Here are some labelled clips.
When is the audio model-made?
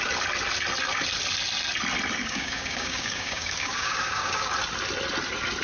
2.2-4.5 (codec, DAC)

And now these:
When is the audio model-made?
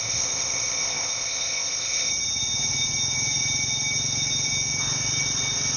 0.0-2.1 (codec, ZipCodec)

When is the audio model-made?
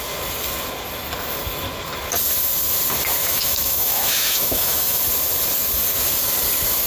3.2-5.0 (autoencoder, DAC-VAE)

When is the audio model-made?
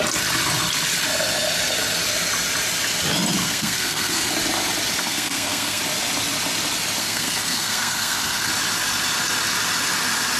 3.4-4.3 (codec, SNAC); 5.0-5.8; 7.0-8.5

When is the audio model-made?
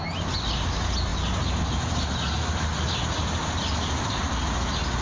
none